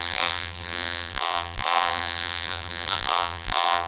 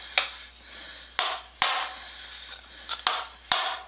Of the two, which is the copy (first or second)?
first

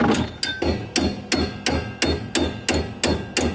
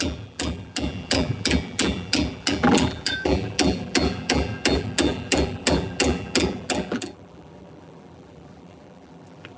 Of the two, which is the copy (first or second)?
second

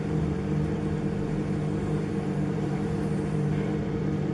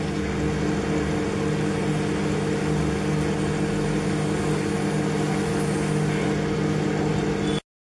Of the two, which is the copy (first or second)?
first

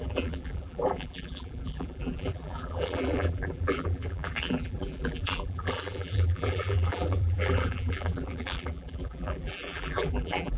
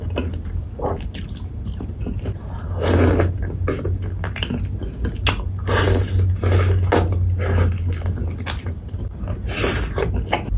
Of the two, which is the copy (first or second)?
first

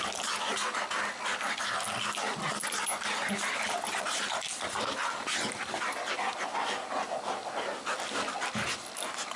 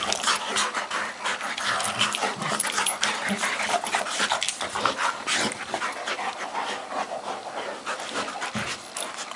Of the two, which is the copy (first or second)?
second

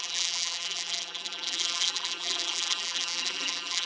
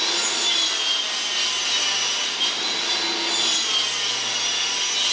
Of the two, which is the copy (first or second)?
first